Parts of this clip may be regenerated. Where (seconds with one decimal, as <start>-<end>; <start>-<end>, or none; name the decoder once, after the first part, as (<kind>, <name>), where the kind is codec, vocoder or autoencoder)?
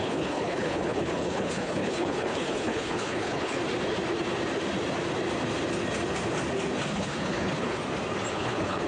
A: 0.0-3.6 (codec, HILCodec); 6.9-7.8; 8.3-8.9